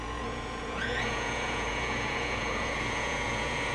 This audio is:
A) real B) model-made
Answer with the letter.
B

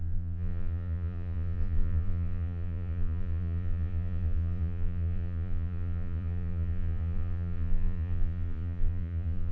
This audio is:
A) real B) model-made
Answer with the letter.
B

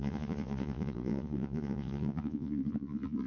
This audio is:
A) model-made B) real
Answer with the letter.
A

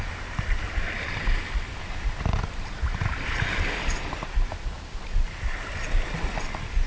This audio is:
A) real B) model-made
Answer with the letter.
A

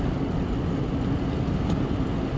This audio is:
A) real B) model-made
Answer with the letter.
A